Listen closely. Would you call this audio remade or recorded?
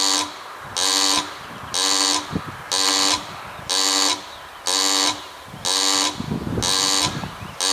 recorded